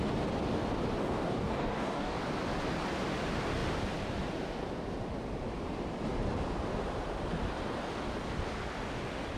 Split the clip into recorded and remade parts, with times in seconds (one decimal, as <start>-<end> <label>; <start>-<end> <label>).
0.0-1.0 recorded; 1.0-2.2 remade; 2.2-9.4 recorded